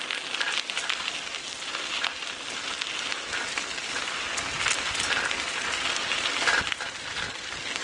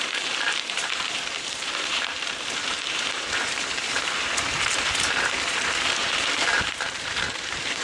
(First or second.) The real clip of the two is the first